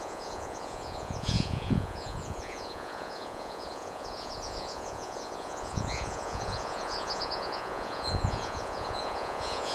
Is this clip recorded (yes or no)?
no